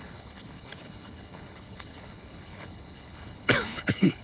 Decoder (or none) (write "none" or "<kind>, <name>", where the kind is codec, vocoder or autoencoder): codec, HILCodec